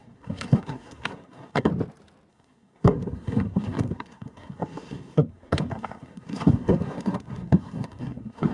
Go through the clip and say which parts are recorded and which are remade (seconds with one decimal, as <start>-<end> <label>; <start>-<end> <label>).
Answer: 0.0-1.7 remade; 1.7-2.3 recorded; 2.3-8.5 remade